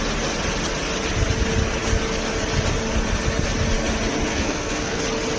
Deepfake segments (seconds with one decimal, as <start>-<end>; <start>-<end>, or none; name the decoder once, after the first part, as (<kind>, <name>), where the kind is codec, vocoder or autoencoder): 4.3-5.0 (codec, SNAC)